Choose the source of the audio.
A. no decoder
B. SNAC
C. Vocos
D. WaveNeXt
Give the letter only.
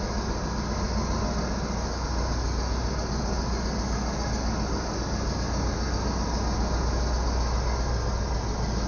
A